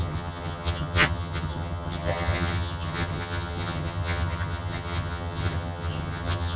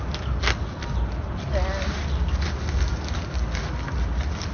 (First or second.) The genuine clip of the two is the second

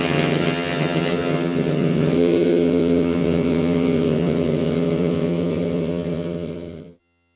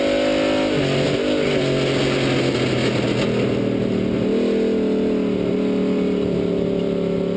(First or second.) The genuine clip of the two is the second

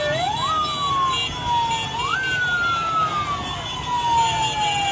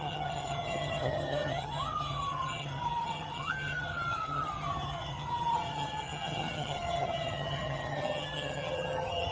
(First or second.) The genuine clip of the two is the first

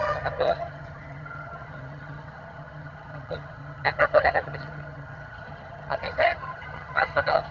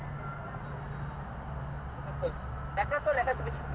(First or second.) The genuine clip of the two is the second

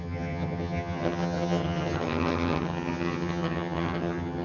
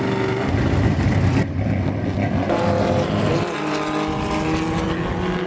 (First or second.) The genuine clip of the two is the second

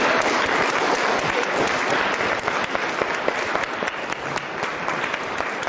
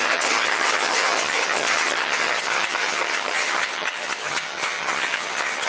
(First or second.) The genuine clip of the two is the first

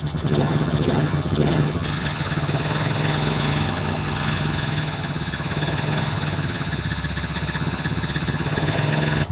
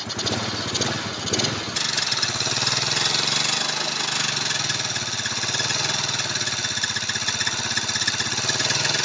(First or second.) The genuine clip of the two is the second